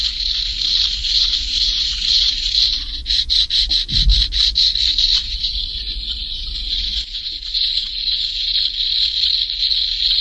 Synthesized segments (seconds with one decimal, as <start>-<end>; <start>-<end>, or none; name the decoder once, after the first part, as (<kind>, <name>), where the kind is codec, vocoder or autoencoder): 1.0-2.3 (vocoder, Vocos); 2.7-3.7; 5.2-8.6